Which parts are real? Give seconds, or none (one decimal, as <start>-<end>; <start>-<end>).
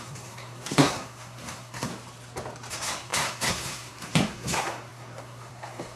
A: 1.9-2.7